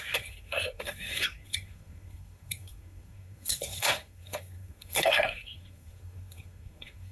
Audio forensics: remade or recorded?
remade